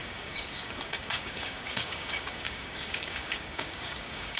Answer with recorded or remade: remade